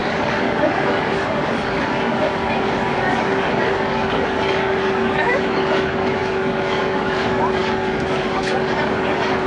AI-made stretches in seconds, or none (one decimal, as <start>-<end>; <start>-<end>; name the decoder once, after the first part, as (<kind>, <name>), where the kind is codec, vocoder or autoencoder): 0.0-9.5 (codec, DAC)